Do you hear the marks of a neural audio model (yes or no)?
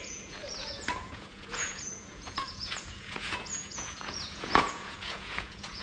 yes